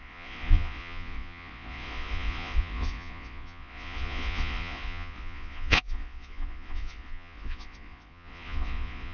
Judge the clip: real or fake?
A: fake